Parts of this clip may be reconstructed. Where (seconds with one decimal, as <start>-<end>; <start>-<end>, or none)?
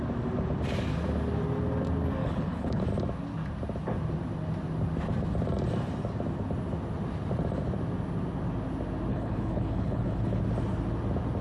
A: 2.2-2.8; 9.1-10.4